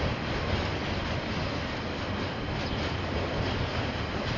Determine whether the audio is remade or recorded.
recorded